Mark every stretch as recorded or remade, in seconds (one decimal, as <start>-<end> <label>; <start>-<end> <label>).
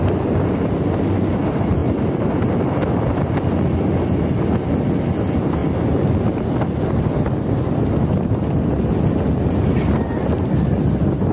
0.0-11.3 recorded